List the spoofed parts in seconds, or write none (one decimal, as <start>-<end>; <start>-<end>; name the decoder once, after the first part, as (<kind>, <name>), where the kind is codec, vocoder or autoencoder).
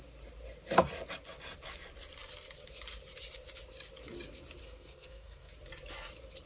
4.6-5.5 (codec, SNAC)